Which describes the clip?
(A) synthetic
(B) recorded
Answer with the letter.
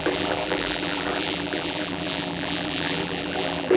A